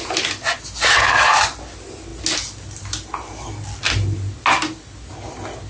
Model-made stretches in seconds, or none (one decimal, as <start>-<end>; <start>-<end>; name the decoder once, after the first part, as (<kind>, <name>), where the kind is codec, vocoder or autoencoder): none